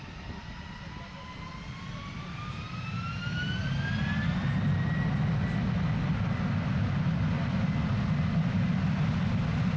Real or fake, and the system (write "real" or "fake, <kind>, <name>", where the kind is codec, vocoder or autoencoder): real